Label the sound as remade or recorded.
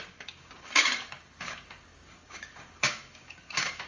remade